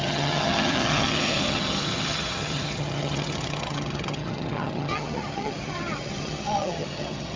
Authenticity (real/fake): fake